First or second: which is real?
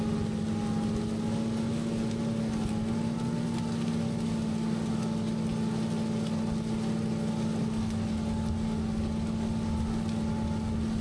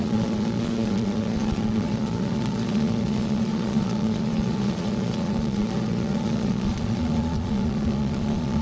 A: first